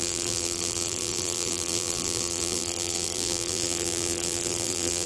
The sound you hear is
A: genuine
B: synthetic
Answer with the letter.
B